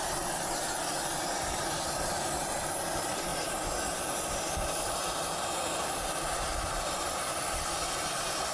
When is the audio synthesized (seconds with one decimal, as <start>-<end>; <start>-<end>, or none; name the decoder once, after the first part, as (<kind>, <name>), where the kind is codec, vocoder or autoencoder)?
0.0-3.3 (vocoder, BigVGAN v2); 4.5-8.5